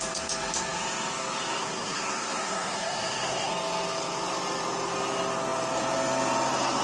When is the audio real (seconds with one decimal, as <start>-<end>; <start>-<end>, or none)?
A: 0.0-1.6; 3.5-6.8